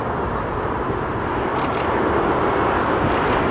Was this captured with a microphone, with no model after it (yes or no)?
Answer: yes